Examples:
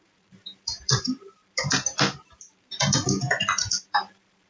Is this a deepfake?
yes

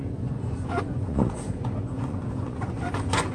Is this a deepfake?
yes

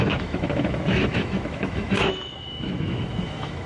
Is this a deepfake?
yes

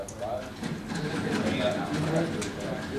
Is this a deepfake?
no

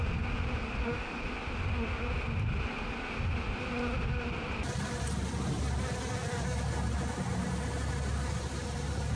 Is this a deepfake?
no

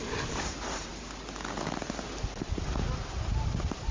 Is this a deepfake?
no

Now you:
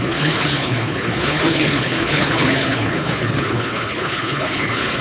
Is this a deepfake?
yes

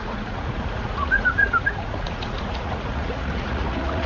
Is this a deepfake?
yes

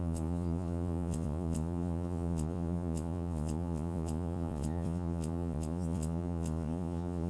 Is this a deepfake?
yes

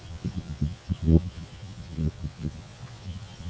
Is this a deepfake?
yes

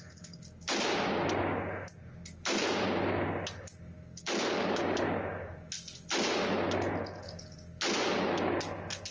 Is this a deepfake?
no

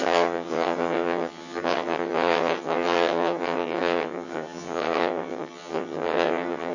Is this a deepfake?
yes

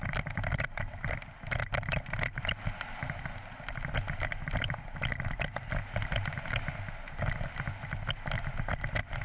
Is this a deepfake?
no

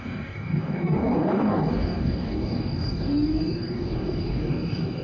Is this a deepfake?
yes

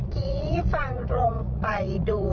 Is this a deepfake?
yes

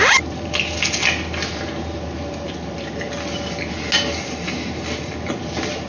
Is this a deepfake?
no